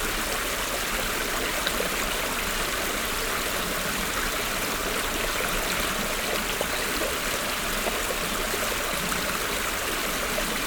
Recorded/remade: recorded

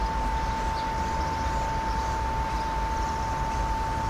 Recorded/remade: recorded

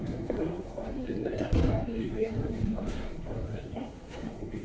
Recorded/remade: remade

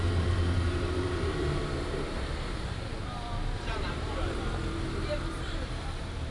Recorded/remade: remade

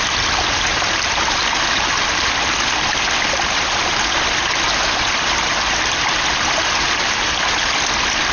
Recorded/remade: recorded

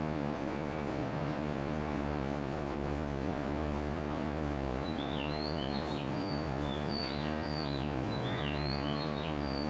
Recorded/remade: remade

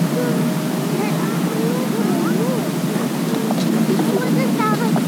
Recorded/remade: recorded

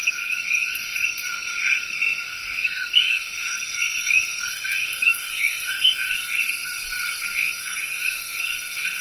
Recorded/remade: remade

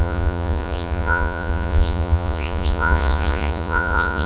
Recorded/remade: remade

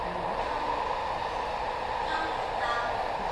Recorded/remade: recorded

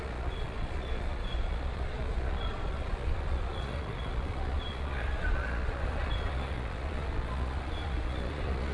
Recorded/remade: remade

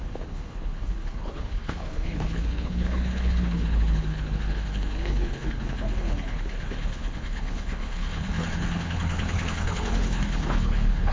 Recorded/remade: remade